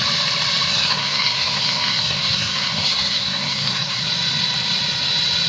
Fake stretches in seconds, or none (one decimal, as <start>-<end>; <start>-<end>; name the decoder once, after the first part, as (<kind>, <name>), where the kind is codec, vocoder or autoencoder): 0.7-4.0 (codec, SNAC)